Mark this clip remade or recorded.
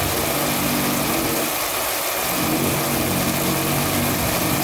recorded